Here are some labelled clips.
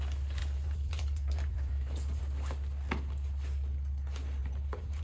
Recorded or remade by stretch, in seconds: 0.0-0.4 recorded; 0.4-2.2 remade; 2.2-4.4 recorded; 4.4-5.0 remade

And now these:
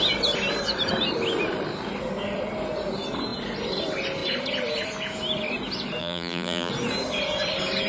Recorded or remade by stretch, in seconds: 0.0-6.0 recorded; 6.0-6.7 remade; 6.7-7.9 recorded

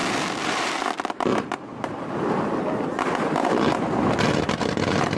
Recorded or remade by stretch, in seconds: 0.0-1.1 recorded; 1.1-1.7 remade; 1.7-4.3 recorded; 4.3-5.2 remade

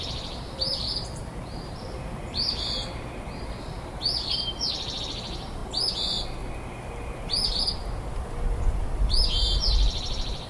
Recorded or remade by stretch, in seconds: 0.0-2.8 remade; 2.8-5.0 recorded; 5.0-5.6 remade; 5.6-8.1 recorded; 8.1-10.5 remade

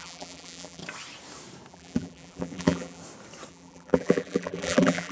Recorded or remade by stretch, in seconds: 0.0-0.8 remade; 0.8-1.7 recorded; 1.7-3.0 remade; 3.0-3.5 recorded; 3.5-5.1 remade

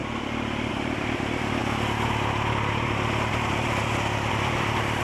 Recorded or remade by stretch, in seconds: 0.0-1.6 remade; 1.6-3.3 recorded; 3.3-3.8 remade; 3.8-4.3 recorded; 4.3-5.0 remade

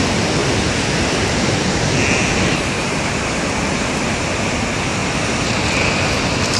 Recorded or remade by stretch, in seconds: 0.0-2.3 recorded; 2.3-3.4 remade; 3.4-5.0 recorded; 5.0-6.6 remade

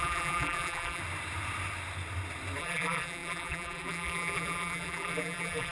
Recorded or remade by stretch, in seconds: 0.0-1.0 remade; 1.0-2.6 recorded; 2.6-5.7 remade